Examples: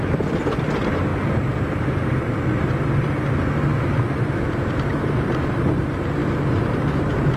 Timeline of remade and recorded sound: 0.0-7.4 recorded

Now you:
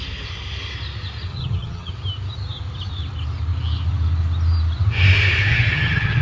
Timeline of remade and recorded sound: 0.0-1.3 recorded; 1.3-1.9 remade; 1.9-5.5 recorded; 5.5-6.2 remade

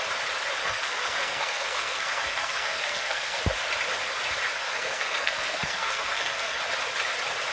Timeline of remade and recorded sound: 0.0-0.6 recorded; 0.6-3.4 remade; 3.4-4.6 recorded; 4.6-6.6 remade; 6.6-7.5 recorded

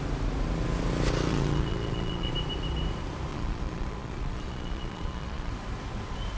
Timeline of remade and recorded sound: 0.0-1.3 recorded; 1.3-2.3 remade; 2.3-3.3 recorded; 3.3-5.5 remade; 5.5-6.4 recorded